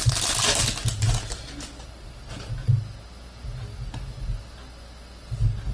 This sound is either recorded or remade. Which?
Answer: recorded